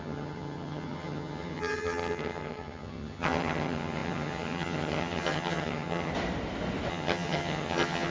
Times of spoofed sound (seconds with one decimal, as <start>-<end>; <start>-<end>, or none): 0.0-6.1; 6.9-8.1